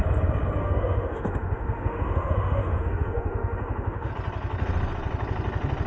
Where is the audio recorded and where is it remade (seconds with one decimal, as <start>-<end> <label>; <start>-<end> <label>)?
0.0-0.6 recorded; 0.6-4.1 remade; 4.1-5.9 recorded